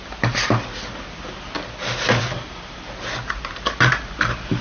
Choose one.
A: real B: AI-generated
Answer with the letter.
A